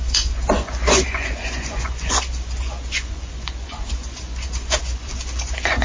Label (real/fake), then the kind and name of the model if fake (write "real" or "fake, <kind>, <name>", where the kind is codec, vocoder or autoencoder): fake, vocoder, Vocos